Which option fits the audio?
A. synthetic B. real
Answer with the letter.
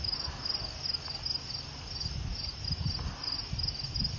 B